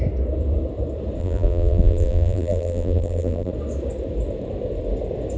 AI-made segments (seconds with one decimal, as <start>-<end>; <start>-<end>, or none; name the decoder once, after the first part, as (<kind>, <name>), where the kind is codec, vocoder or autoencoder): 1.2-3.5 (vocoder, BigVGAN v2)

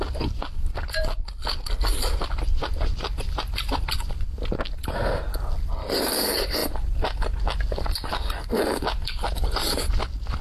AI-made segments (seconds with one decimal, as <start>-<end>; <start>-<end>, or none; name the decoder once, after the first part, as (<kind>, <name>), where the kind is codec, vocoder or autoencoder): none

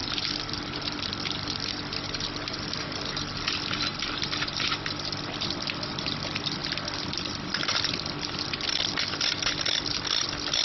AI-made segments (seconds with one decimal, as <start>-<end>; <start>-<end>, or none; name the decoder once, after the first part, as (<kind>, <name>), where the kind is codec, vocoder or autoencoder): none

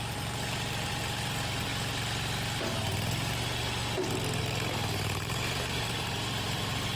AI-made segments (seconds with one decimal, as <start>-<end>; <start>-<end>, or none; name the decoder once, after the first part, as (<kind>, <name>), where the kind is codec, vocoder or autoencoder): 0.0-1.7 (vocoder, BigVGAN v2); 4.4-7.0

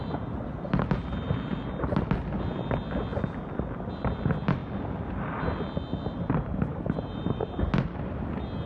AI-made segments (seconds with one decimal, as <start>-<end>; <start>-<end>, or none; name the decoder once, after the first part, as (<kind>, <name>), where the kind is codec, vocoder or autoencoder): 6.7-7.6 (vocoder, BigVGAN v2)

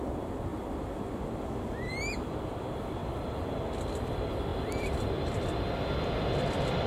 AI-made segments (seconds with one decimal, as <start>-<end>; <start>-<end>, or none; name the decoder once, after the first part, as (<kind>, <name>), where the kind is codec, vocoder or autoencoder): 0.0-3.0 (vocoder, BigVGAN v2); 4.0-4.5; 6.4-6.9